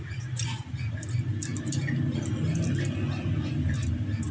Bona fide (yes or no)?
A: yes